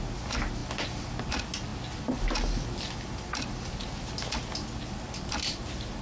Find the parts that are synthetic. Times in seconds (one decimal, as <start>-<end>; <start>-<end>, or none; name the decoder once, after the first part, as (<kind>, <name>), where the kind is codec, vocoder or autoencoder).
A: none